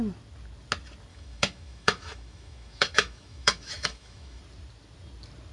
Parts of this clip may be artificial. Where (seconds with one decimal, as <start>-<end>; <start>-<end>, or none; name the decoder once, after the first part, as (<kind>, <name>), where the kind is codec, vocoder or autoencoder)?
1.1-4.4 (autoencoder, DAC-VAE)